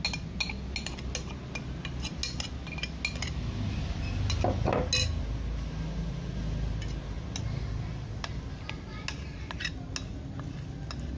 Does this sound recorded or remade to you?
recorded